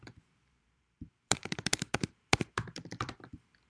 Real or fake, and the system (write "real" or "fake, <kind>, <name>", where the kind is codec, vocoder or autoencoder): fake, vocoder, BigVGAN v2